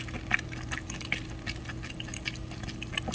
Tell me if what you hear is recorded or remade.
recorded